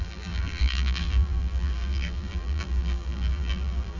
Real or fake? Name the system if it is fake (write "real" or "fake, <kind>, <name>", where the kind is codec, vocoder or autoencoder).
fake, vocoder, BigVGAN v2